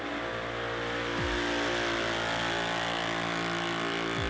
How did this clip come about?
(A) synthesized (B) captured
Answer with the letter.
B